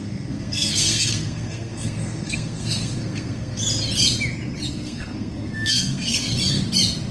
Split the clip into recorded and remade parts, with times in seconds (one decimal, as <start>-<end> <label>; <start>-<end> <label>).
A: 0.0-3.6 remade; 3.6-4.7 recorded; 4.7-6.3 remade; 6.3-7.1 recorded

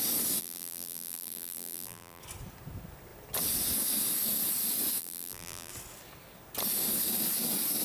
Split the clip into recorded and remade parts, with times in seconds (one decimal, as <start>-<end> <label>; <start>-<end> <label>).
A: 0.0-0.4 recorded; 0.4-2.2 remade; 2.2-5.0 recorded; 5.0-5.7 remade; 5.7-7.8 recorded

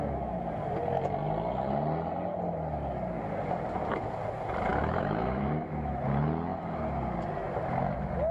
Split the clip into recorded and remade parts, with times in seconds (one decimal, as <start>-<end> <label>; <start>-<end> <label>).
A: 0.0-4.7 recorded; 4.7-6.0 remade; 6.0-8.3 recorded

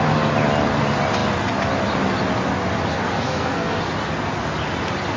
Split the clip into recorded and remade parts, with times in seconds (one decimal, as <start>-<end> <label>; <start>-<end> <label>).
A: 0.0-2.9 recorded; 2.9-3.8 remade; 3.8-5.2 recorded

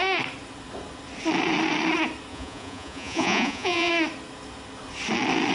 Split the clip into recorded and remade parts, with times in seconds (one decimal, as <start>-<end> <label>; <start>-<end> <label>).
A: 0.0-2.3 recorded; 2.3-3.9 remade; 3.9-5.5 recorded